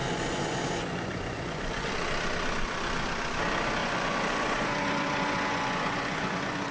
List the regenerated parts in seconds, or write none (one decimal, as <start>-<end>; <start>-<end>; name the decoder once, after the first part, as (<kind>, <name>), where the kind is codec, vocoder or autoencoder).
0.0-1.9 (vocoder, Vocos); 3.8-6.7